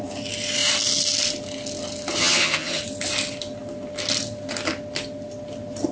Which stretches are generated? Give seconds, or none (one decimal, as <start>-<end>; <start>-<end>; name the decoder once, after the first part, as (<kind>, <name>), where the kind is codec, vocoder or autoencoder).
2.2-2.8 (vocoder, HiFi-GAN)